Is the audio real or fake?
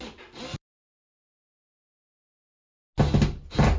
real